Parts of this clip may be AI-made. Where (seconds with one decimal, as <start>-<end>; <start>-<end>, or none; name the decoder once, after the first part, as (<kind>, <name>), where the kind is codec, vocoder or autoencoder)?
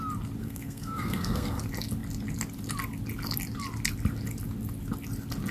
0.4-1.6 (codec, SNAC)